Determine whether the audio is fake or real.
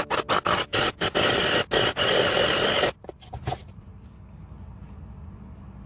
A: real